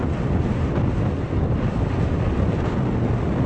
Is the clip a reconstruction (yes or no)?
no